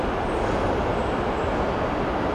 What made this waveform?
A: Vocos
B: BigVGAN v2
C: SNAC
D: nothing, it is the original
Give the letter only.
D